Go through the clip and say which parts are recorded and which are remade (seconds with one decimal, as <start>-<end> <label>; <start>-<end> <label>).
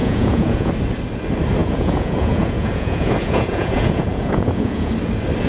0.0-0.7 remade; 0.7-1.6 recorded; 1.6-4.9 remade; 4.9-5.5 recorded